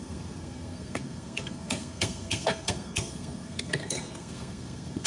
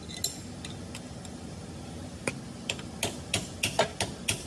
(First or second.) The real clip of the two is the second